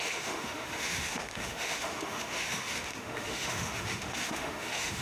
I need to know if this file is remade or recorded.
remade